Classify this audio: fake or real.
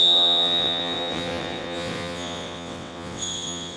fake